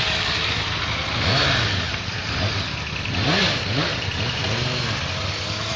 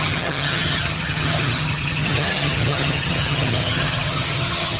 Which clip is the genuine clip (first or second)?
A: first